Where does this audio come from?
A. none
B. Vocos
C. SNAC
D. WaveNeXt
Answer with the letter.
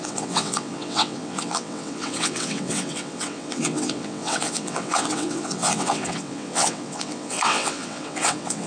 D